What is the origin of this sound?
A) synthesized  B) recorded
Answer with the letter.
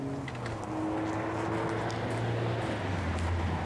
B